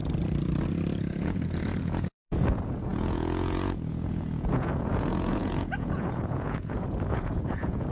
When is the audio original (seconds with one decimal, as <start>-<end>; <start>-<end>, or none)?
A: 0.0-1.0